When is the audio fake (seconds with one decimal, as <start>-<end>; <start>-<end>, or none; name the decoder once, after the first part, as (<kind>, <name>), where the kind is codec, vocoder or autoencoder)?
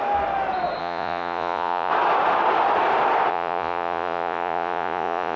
0.8-1.9 (vocoder, Vocos); 3.3-5.4